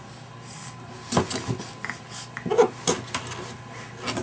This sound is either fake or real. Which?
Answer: real